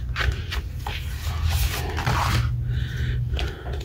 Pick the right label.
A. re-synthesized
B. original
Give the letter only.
B